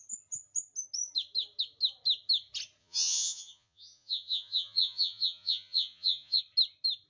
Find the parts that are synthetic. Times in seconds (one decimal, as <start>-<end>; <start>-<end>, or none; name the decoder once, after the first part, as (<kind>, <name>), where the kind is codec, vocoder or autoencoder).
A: 2.8-6.4 (vocoder, Vocos)